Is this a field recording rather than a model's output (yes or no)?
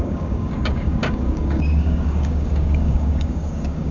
no